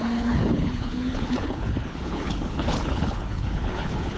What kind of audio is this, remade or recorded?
remade